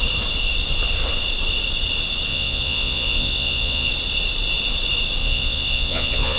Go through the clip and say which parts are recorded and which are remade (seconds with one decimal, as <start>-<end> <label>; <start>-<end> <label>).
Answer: 0.0-2.3 recorded; 2.3-3.9 remade; 3.9-5.2 recorded; 5.2-6.4 remade